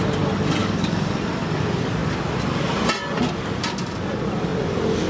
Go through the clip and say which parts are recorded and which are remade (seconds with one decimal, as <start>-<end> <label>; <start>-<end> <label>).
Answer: 0.0-0.6 recorded; 0.6-1.1 remade; 1.1-5.1 recorded